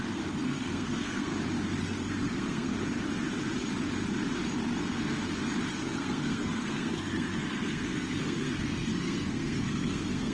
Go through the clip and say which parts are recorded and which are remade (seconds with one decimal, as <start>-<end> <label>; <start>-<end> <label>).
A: 0.0-1.3 remade; 1.3-1.8 recorded; 1.8-2.7 remade; 2.7-5.7 recorded; 5.7-10.3 remade